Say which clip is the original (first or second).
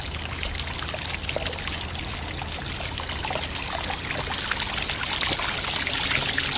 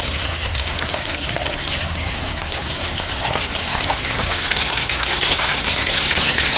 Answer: first